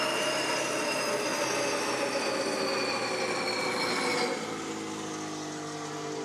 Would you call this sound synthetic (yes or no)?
no